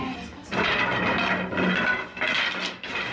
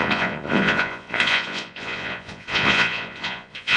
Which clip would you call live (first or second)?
first